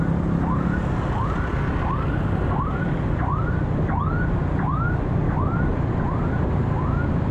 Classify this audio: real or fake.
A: real